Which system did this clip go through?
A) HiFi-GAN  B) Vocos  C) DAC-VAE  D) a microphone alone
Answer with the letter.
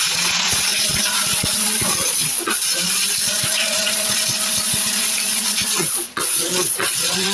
B